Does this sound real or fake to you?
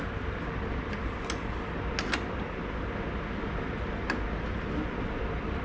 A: real